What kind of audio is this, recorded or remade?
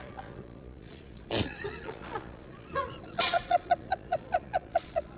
remade